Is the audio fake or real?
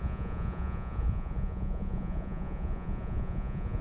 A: fake